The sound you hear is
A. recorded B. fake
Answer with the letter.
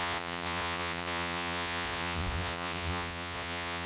B